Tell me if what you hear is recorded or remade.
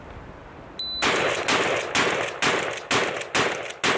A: recorded